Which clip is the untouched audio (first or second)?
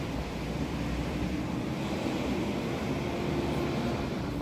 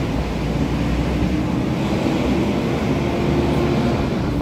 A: second